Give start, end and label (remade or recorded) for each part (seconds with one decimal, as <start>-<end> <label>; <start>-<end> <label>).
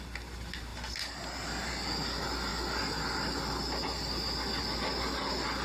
0.0-5.6 recorded